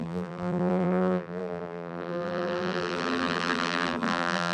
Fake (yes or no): yes